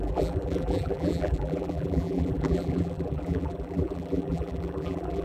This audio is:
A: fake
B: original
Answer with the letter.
A